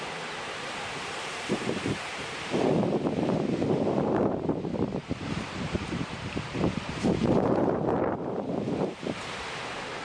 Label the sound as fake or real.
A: fake